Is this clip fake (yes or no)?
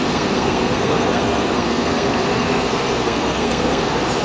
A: yes